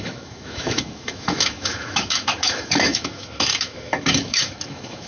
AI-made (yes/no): yes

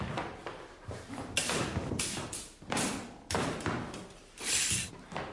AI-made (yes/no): no